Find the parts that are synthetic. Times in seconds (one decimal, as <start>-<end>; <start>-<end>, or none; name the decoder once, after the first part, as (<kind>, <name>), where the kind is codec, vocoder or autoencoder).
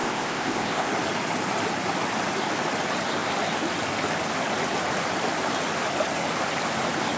0.0-0.9 (codec, ZipCodec)